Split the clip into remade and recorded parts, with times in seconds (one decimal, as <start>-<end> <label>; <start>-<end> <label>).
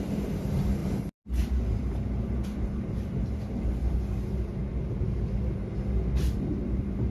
0.0-5.7 remade; 5.7-6.2 recorded; 6.2-7.1 remade